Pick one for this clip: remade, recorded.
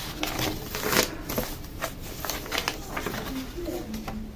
recorded